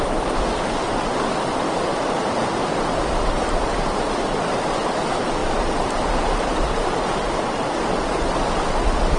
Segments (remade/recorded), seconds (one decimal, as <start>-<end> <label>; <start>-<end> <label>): 0.0-9.2 recorded